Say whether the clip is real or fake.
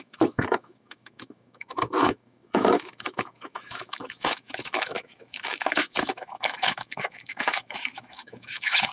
fake